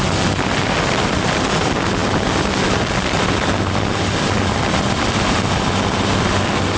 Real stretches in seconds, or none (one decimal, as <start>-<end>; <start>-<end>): 0.0-6.8